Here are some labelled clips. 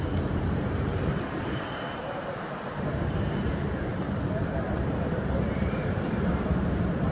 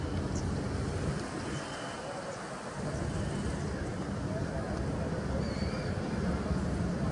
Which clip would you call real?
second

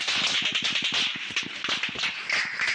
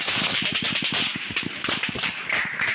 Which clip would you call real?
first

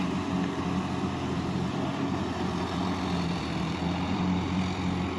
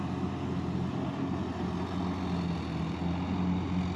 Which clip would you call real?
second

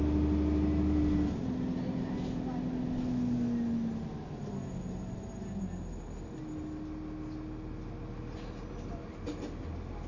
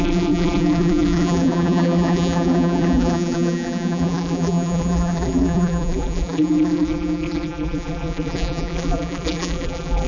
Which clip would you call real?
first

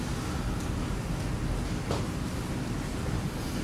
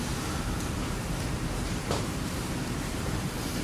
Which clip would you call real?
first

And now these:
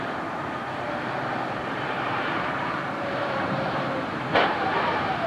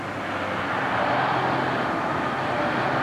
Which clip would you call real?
second